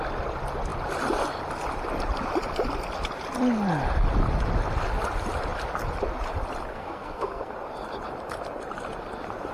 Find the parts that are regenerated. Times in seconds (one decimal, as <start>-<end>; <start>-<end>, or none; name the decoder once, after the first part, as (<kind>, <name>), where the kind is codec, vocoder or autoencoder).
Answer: 6.7-7.5 (codec, SNAC)